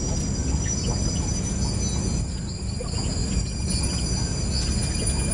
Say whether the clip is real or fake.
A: real